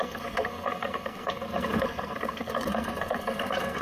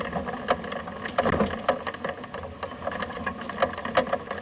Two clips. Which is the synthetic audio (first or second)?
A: first